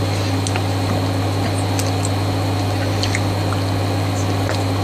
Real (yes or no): yes